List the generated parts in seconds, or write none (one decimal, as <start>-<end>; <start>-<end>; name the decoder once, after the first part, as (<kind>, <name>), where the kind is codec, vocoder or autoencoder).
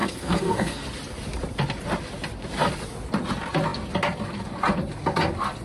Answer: 0.0-0.8 (codec, SNAC)